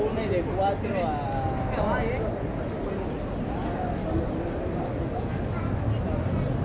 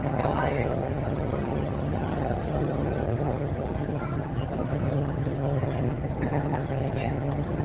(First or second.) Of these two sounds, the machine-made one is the second